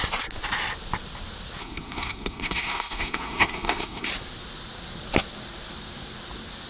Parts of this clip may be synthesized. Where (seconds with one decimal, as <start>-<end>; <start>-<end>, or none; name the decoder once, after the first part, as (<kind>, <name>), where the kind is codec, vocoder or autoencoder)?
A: 1.6-4.1 (codec, SNAC)